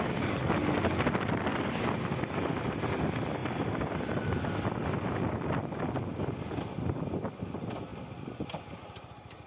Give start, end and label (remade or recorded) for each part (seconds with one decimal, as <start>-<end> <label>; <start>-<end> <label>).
0.0-1.5 recorded; 1.5-2.8 remade; 2.8-3.4 recorded; 3.4-4.2 remade; 4.2-7.9 recorded; 7.9-8.6 remade; 8.6-9.5 recorded